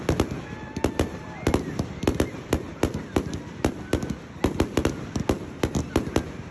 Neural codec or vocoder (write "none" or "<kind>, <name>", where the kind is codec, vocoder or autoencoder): none